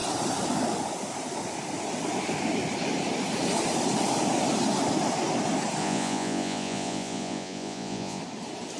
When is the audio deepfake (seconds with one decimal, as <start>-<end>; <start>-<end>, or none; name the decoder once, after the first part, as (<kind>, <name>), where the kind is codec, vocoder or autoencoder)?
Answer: 5.8-8.2 (vocoder, Vocos)